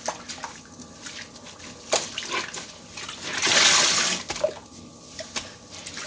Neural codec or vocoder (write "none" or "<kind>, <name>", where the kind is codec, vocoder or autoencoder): none